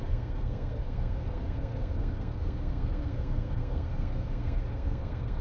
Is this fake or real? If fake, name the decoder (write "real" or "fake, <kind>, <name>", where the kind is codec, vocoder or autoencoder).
fake, codec, SNAC